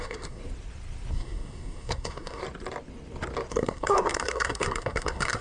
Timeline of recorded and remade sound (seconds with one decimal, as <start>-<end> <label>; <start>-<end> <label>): 0.0-0.4 remade; 0.4-1.1 recorded; 1.1-2.4 remade; 2.4-3.5 recorded; 3.5-5.4 remade